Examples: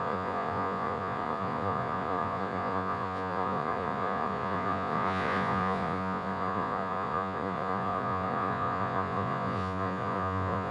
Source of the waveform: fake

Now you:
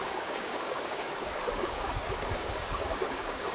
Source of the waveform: fake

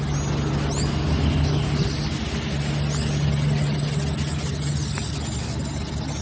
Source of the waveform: real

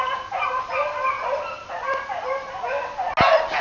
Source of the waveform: real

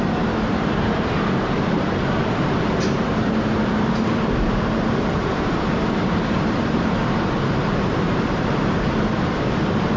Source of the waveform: fake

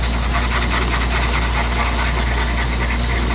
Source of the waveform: real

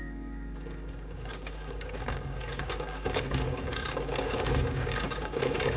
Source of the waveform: fake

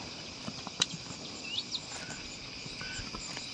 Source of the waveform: real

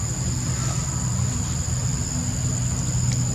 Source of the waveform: real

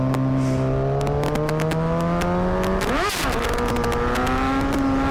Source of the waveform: real